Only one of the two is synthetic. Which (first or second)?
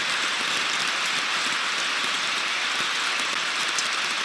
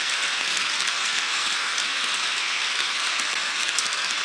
second